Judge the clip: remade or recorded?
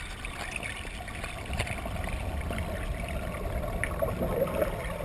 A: recorded